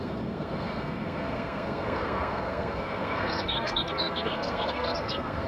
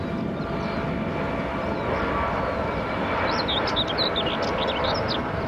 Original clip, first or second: second